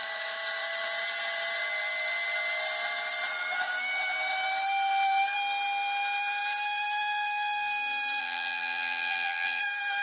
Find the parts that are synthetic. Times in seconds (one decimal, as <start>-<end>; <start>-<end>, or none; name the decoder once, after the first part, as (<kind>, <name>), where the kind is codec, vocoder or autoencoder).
8.2-9.6 (vocoder, BigVGAN v2)